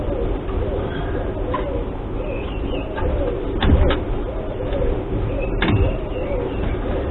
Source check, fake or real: real